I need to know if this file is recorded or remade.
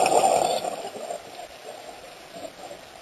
recorded